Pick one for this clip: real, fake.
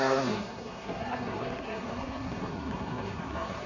fake